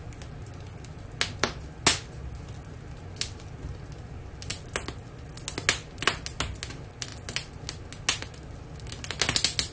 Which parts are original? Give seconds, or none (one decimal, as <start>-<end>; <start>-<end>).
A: 0.0-9.7